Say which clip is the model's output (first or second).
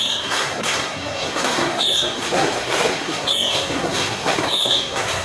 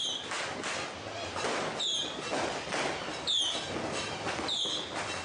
first